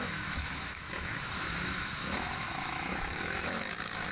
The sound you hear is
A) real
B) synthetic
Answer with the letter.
B